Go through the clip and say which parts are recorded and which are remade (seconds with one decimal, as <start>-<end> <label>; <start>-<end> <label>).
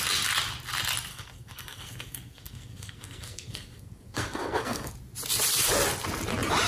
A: 0.0-1.1 recorded; 1.1-4.9 remade; 4.9-6.7 recorded